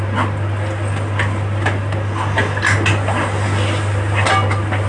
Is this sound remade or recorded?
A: recorded